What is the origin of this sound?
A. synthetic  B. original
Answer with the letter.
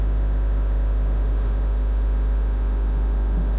A